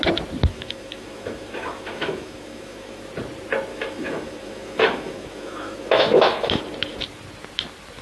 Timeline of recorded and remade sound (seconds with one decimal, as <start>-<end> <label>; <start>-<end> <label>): 0.0-0.5 recorded; 0.5-3.0 remade; 3.0-3.7 recorded; 3.7-6.6 remade; 6.6-8.0 recorded